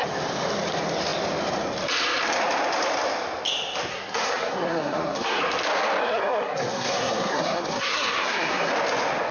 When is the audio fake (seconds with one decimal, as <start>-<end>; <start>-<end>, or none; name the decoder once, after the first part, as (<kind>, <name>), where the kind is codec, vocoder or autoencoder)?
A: 3.9-5.4 (codec, SNAC); 6.0-8.7